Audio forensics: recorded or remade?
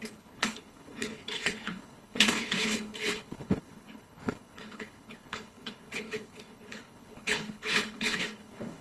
remade